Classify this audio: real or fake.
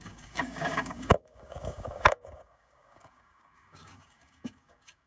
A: fake